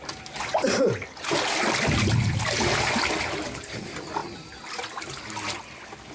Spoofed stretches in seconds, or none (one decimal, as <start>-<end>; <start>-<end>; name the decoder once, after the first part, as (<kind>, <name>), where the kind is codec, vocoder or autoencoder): none